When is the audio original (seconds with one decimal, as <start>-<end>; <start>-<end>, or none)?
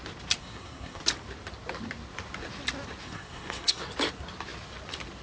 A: 0.0-0.4; 1.0-3.0; 3.8-5.2